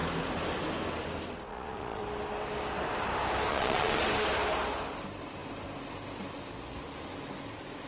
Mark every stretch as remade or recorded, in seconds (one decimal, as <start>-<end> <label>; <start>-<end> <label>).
0.0-1.5 recorded; 1.5-2.0 remade; 2.0-3.5 recorded; 3.5-4.0 remade; 4.0-7.9 recorded